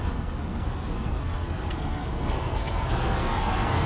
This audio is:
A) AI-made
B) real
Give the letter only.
A